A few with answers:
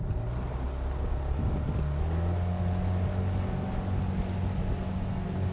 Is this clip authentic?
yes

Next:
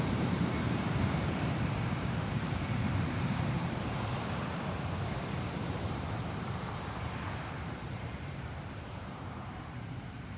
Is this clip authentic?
no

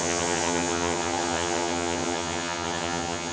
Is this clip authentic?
no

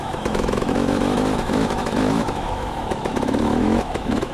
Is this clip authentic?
no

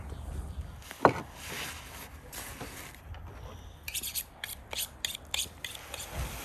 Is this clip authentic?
yes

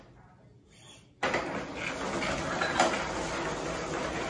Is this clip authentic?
yes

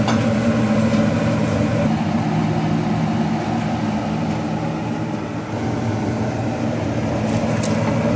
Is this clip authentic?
yes